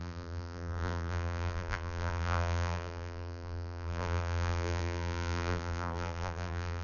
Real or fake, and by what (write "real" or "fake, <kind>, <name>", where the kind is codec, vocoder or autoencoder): fake, vocoder, BigVGAN v2